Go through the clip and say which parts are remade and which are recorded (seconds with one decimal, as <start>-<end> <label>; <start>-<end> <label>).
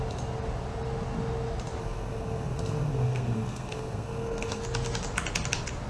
0.0-1.8 recorded; 1.8-4.6 remade; 4.6-5.9 recorded